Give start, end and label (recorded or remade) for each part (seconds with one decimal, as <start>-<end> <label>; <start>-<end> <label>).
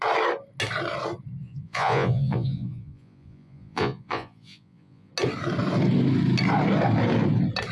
0.0-1.4 recorded; 1.4-5.1 remade; 5.1-7.7 recorded